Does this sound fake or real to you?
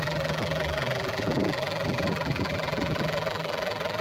fake